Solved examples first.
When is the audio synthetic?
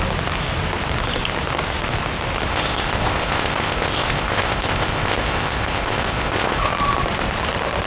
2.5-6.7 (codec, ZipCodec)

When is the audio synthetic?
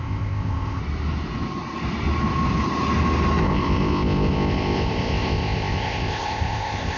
0.0-0.8 (codec, ZipCodec); 3.4-7.0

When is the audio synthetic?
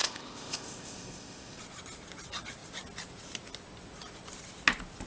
0.0-1.6 (codec, ZipCodec)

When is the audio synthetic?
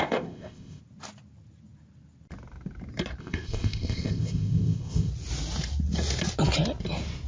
0.0-0.8 (codec, ZipCodec); 3.2-5.1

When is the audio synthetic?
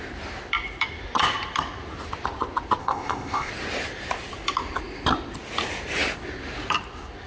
2.8-3.5 (codec, ZipCodec)